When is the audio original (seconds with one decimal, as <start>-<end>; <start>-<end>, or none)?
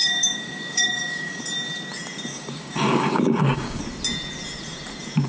1.4-2.3; 3.8-5.3